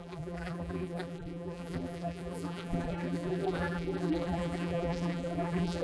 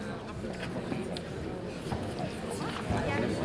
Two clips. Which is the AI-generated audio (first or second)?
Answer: first